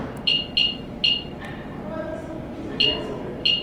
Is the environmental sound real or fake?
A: real